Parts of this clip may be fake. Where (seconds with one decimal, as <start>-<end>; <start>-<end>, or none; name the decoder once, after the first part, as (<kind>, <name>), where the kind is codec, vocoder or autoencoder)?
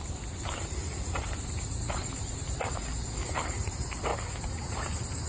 0.0-4.1 (vocoder, BigVGAN v2); 4.7-5.3